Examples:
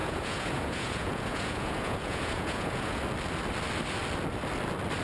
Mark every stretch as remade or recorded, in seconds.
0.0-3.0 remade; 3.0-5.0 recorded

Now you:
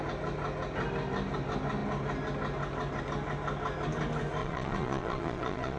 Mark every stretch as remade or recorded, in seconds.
0.0-4.4 recorded; 4.4-5.8 remade

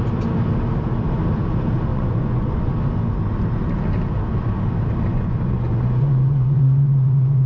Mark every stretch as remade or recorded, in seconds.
0.0-1.9 recorded; 1.9-2.7 remade; 2.7-5.1 recorded; 5.1-7.5 remade

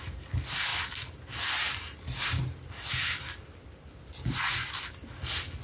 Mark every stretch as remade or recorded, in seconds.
0.0-5.6 recorded

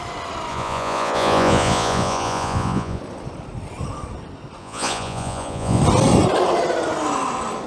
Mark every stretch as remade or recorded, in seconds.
0.0-0.5 recorded; 0.5-3.0 remade; 3.0-4.6 recorded; 4.6-5.8 remade; 5.8-7.7 recorded

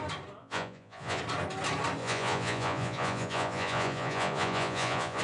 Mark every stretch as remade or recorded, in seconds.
0.0-0.4 recorded; 0.4-1.2 remade; 1.2-2.0 recorded; 2.0-5.2 remade

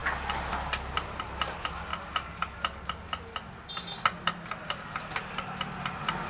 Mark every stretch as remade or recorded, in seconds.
0.0-6.3 recorded

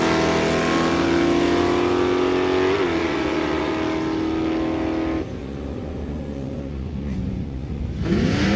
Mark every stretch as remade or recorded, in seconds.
0.0-3.0 recorded; 3.0-3.7 remade; 3.7-5.4 recorded; 5.4-7.8 remade; 7.8-8.6 recorded